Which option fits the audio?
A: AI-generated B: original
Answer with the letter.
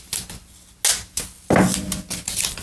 B